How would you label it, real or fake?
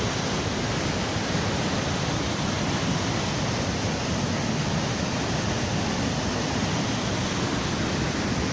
real